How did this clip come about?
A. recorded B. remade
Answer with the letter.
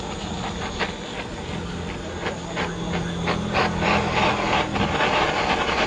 A